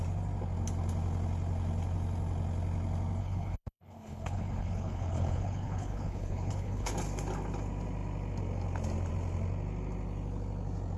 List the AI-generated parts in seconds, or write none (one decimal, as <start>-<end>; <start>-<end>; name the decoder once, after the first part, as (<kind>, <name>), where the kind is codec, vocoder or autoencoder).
3.2-6.9 (codec, HILCodec)